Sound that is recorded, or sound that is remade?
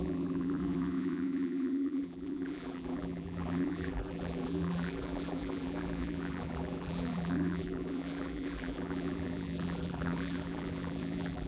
remade